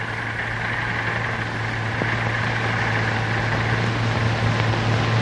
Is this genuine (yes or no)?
yes